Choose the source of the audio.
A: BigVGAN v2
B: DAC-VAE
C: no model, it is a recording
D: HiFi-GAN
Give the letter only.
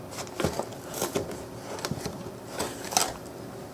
C